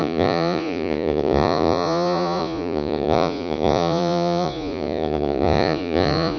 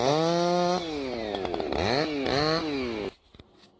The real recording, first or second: second